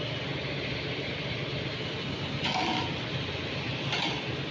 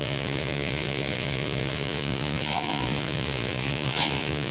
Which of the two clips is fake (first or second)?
second